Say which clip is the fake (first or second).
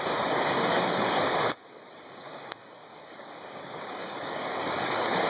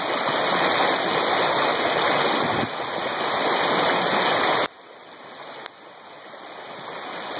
first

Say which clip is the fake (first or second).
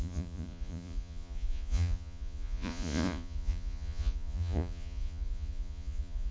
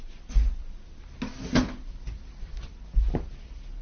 first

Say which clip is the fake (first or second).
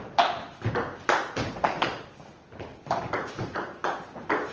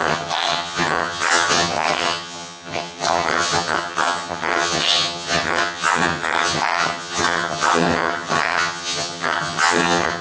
second